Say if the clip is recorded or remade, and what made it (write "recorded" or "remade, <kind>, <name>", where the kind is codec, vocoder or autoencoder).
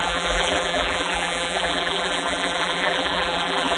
remade, vocoder, BigVGAN v2